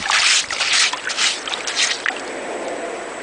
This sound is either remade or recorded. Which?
recorded